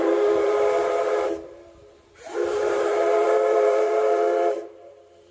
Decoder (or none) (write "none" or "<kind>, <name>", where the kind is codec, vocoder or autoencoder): vocoder, BigVGAN v2